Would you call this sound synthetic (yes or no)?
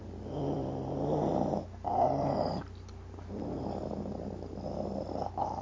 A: no